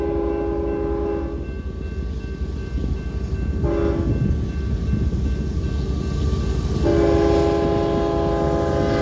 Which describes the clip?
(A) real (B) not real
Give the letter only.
A